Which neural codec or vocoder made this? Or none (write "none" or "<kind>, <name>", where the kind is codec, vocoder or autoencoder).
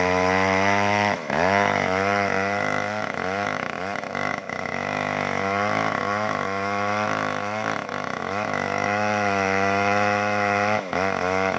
autoencoder, DAC-VAE